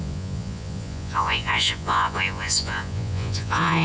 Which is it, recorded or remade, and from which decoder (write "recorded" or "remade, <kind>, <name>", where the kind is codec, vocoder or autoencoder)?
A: remade, vocoder, Vocos